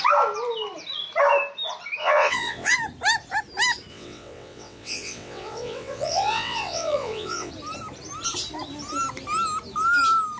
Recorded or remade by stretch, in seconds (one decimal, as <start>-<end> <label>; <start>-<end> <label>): 0.0-2.0 recorded; 2.0-2.7 remade; 2.7-3.9 recorded; 3.9-7.5 remade; 7.5-10.4 recorded